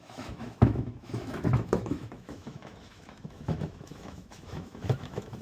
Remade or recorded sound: remade